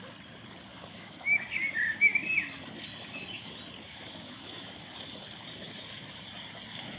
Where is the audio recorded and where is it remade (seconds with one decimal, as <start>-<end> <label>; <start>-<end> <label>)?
0.0-0.7 recorded; 0.7-1.4 remade; 1.4-3.9 recorded; 3.9-4.9 remade; 4.9-7.0 recorded